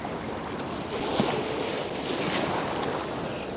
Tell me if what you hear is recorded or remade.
recorded